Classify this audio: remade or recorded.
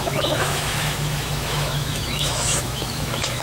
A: remade